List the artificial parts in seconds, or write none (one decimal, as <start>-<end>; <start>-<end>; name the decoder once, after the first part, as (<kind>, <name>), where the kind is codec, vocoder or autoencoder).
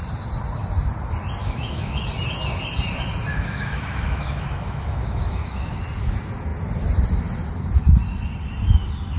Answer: 1.4-2.0 (autoencoder, DAC-VAE); 3.3-5.8